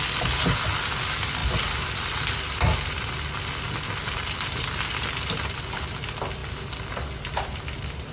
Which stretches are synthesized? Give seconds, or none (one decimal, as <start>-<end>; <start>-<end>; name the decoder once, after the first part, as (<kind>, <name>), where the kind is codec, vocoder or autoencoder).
none